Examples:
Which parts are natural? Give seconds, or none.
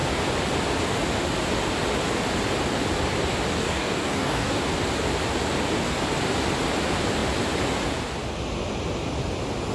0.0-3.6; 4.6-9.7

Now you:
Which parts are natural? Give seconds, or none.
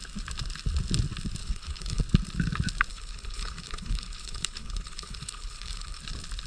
0.0-1.4; 2.0-2.9; 6.0-6.5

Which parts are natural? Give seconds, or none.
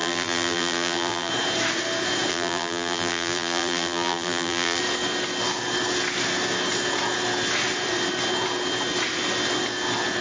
1.3-2.3; 4.8-10.2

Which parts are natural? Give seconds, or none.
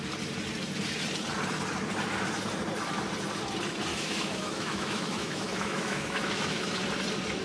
0.0-3.9; 6.8-7.4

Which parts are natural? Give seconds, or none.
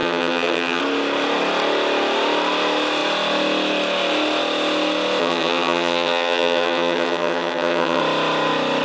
0.8-5.2; 8.0-8.8